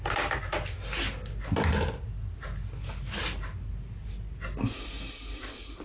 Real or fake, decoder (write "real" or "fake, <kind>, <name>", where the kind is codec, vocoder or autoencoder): real